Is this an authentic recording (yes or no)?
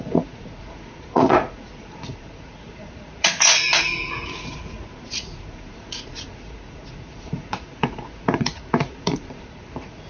no